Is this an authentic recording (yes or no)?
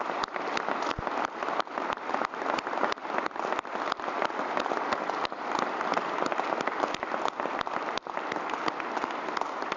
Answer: yes